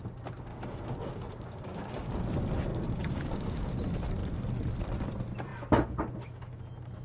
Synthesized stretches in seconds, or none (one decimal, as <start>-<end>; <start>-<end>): 0.5-2.2; 2.7-3.7